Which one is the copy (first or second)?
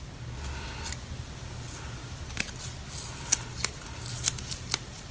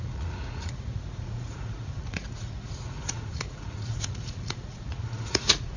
second